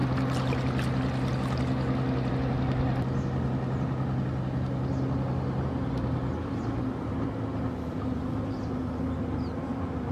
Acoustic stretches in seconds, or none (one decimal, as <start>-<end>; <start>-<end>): 0.0-10.1